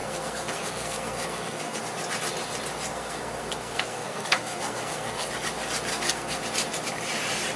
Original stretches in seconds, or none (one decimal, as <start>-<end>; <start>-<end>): 1.8-2.9; 5.3-5.9; 6.4-7.6